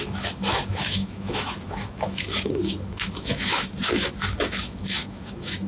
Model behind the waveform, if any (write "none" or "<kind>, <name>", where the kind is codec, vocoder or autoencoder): autoencoder, DAC-VAE